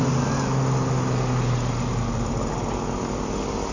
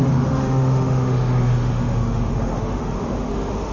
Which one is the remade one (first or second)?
second